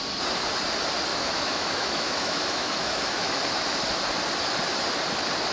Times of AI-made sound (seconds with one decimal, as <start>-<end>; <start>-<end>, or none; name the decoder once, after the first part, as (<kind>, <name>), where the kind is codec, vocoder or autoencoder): 1.1-3.4 (autoencoder, DAC-VAE)